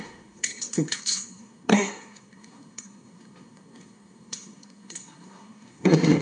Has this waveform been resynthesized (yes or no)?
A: yes